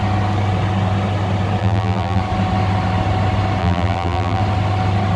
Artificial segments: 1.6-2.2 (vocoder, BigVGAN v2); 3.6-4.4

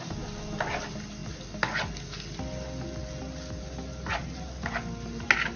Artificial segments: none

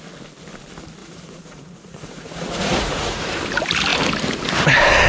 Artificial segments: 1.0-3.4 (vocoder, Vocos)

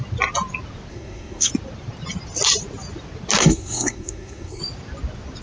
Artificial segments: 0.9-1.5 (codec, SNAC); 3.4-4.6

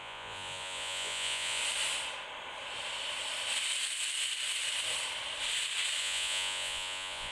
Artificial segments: 0.0-1.6 (vocoder, Vocos); 6.0-7.3